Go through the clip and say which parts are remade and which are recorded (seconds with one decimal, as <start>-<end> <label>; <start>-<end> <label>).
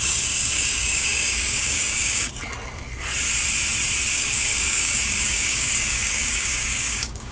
0.0-2.4 remade; 2.4-4.1 recorded; 4.1-7.3 remade